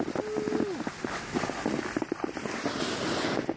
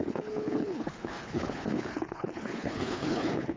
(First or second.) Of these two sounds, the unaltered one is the first